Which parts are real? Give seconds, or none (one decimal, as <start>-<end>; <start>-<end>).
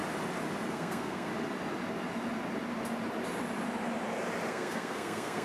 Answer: 0.0-0.7; 1.3-4.5